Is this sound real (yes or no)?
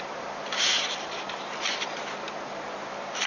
yes